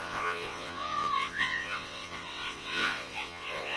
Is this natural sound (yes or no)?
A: no